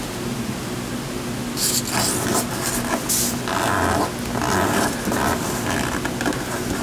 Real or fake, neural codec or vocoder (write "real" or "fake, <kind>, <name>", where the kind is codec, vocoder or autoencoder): real